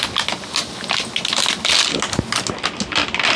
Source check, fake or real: real